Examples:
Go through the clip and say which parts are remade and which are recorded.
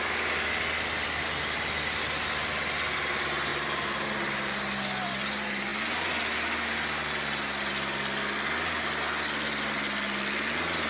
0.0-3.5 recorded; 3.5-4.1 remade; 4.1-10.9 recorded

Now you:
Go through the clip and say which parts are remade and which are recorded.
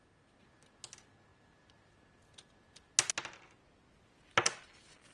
0.0-5.1 recorded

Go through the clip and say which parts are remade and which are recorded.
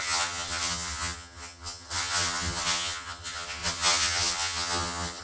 0.0-5.2 remade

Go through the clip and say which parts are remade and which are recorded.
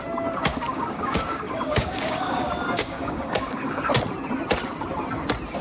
0.0-0.5 recorded; 0.5-3.9 remade; 3.9-5.6 recorded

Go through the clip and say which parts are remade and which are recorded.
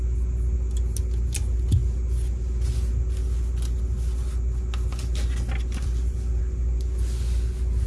0.0-5.8 recorded; 5.8-6.4 remade; 6.4-7.9 recorded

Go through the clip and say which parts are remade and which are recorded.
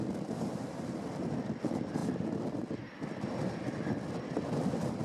0.0-5.0 recorded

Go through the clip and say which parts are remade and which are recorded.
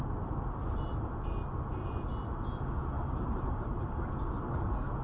0.0-5.0 recorded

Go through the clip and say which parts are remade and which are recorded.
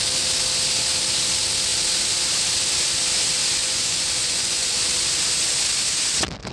0.0-3.6 recorded; 3.6-4.8 remade; 4.8-6.5 recorded